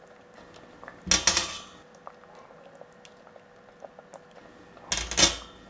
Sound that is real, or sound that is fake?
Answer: real